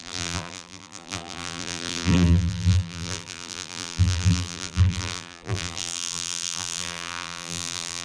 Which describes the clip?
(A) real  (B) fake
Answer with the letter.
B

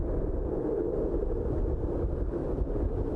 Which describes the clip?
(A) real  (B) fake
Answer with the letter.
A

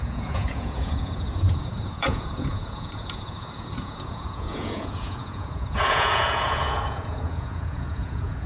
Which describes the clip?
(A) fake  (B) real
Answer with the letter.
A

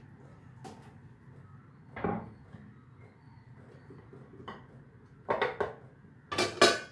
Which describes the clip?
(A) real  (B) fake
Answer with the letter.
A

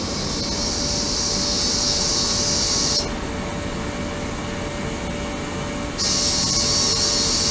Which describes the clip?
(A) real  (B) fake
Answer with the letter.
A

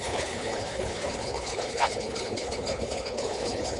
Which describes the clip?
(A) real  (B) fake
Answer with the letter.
B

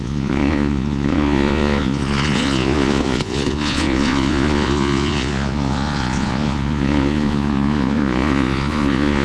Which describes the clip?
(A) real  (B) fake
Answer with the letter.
B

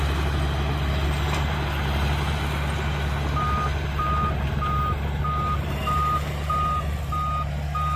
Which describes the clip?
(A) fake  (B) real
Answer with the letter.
B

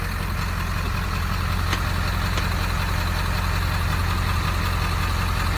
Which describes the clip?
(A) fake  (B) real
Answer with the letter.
B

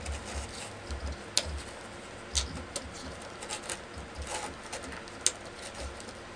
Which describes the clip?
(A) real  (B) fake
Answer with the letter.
A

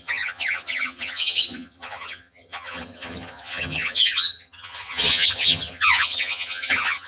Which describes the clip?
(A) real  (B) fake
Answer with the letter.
B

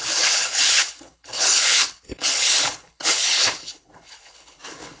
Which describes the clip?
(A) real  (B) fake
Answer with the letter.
B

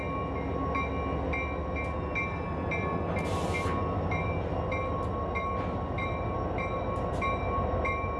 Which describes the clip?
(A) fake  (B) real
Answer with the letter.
B